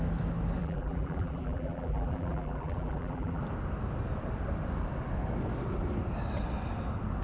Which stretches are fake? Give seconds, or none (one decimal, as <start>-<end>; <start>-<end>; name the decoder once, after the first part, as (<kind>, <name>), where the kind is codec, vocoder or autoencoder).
0.6-3.4 (vocoder, BigVGAN v2)